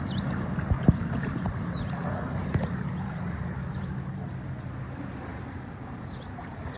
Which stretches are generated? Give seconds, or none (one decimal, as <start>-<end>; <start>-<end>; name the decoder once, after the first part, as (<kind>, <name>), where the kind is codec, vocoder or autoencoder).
none